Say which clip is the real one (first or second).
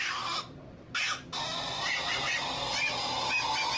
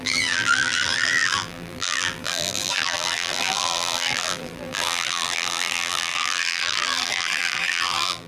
first